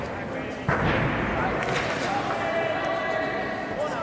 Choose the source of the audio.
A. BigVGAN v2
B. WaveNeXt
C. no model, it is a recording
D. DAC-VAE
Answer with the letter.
C